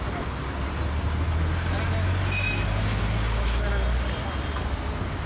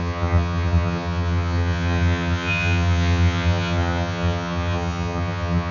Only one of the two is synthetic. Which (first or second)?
second